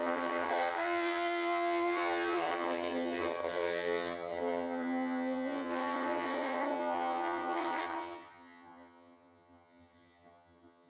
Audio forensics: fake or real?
fake